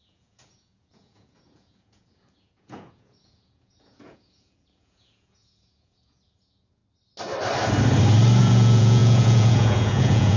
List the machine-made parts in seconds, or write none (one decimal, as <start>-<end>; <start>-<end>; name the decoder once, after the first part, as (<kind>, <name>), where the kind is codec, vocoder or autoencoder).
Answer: 0.0-6.8 (vocoder, Vocos); 8.4-10.4